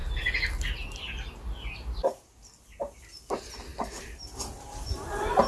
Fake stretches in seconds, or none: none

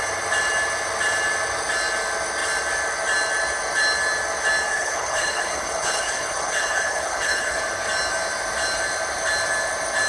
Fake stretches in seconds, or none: 4.7-7.6

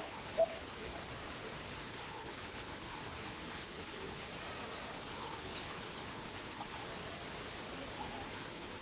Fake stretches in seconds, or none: 0.0-0.9; 1.7-4.3; 4.9-6.8; 8.3-8.8

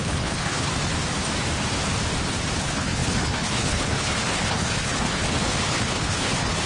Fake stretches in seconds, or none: 0.0-0.7; 2.6-6.7

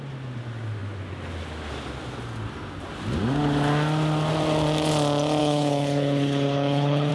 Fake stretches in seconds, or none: 5.4-7.1

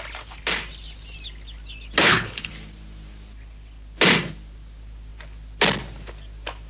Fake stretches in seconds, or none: 2.0-2.5

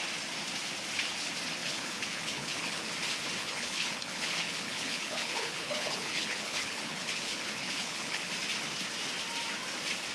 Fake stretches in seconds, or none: 1.6-2.9; 3.4-8.3